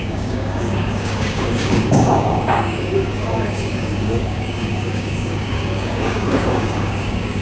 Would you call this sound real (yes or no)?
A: no